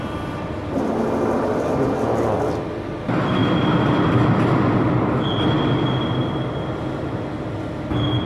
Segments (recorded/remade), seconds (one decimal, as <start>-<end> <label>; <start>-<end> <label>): 0.0-8.3 recorded